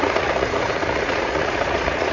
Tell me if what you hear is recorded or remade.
remade